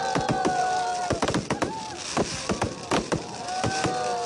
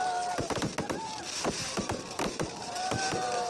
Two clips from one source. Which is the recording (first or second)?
first